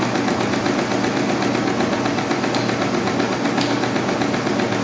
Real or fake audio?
real